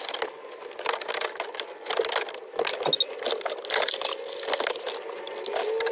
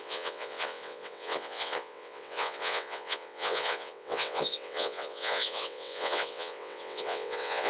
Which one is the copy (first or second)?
second